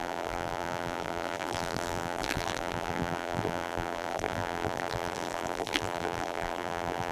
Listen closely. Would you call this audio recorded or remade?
remade